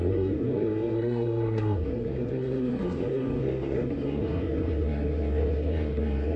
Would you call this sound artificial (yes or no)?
yes